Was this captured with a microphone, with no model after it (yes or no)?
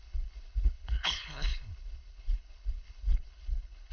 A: no